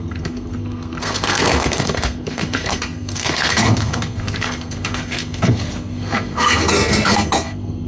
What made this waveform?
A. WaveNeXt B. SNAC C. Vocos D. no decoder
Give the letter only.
B